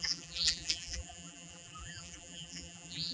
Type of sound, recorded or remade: remade